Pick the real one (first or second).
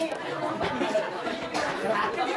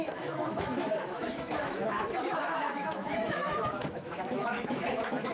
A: first